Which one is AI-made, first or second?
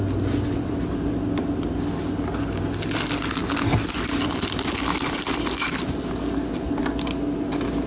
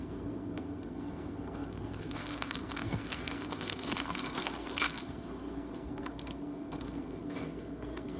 second